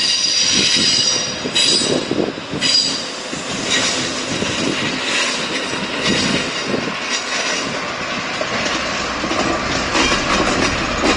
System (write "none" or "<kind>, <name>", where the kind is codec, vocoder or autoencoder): none